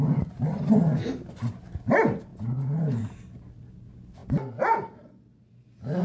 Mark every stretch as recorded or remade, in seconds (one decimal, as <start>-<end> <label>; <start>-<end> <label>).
0.0-6.0 recorded